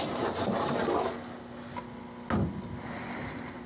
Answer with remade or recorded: recorded